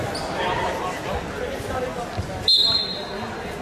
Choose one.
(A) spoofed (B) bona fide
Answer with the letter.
B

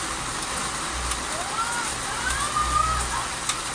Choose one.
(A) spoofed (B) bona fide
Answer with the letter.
B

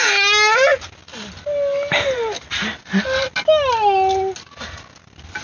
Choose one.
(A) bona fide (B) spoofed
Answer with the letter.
A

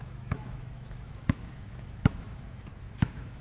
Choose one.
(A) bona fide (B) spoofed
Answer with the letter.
B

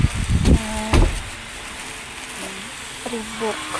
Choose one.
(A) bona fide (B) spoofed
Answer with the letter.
A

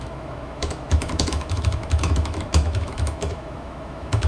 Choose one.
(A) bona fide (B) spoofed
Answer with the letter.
B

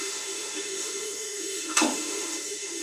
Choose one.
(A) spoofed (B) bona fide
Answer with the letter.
A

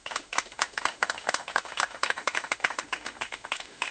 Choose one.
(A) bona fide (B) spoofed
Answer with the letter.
B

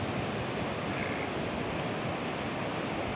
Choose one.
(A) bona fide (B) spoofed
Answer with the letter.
A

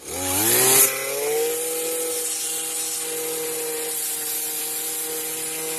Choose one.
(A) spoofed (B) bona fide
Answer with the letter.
B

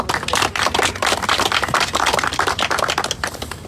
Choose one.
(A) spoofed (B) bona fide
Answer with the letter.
B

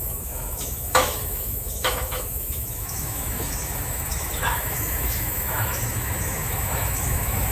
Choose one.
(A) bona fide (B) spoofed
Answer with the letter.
B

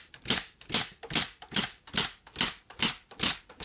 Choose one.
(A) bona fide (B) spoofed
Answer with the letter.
A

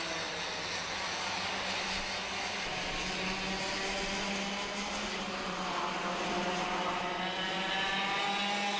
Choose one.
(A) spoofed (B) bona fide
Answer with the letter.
B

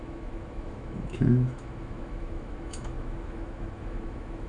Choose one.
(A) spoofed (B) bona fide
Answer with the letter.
A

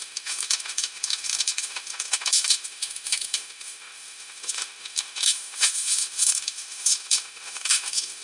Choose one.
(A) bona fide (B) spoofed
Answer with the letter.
B